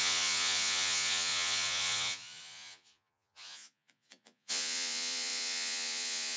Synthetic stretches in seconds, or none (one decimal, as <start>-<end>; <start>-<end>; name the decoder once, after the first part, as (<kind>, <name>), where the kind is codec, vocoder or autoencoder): 0.0-6.4 (vocoder, Vocos)